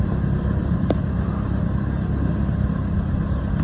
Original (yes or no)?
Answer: yes